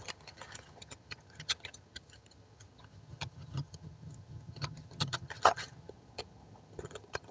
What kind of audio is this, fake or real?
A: fake